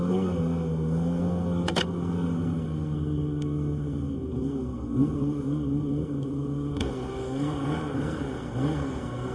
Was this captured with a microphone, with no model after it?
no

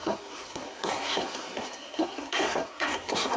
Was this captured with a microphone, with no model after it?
no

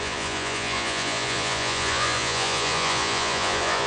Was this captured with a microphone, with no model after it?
no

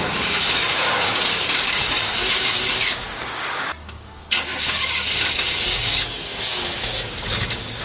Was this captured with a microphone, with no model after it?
no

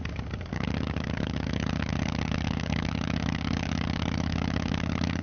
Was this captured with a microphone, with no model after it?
no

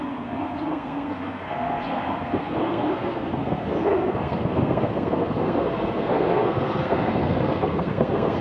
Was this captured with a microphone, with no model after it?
no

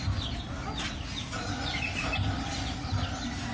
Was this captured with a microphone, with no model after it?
yes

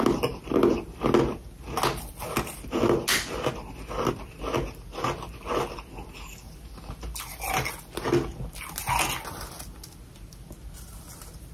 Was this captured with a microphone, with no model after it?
yes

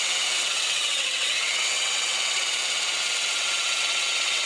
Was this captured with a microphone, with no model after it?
no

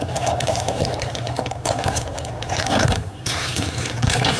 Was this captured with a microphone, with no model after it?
no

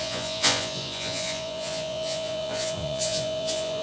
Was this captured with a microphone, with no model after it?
no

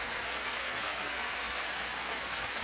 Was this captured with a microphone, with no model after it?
no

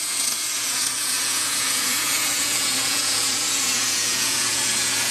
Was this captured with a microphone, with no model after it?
no